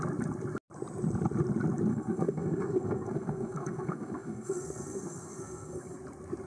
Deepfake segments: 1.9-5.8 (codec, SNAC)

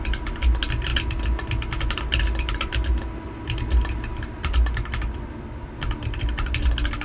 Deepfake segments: none